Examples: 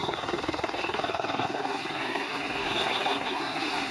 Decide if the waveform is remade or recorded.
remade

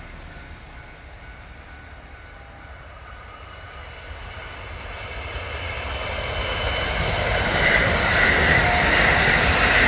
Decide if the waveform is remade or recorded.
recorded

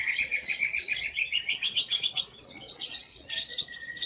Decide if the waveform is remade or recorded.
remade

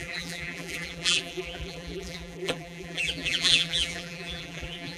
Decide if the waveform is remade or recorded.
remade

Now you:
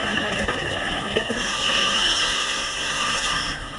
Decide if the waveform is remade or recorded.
remade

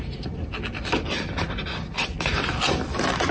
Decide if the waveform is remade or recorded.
recorded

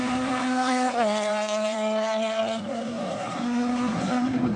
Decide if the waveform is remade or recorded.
remade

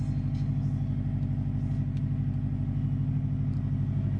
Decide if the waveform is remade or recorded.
recorded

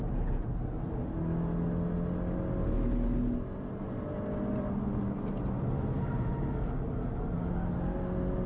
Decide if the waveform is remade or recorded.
recorded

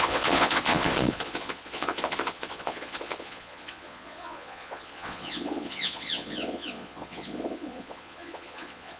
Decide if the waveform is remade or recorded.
remade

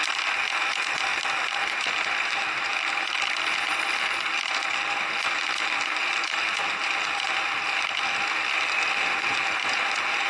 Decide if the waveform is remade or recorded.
recorded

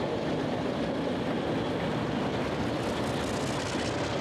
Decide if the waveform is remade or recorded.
recorded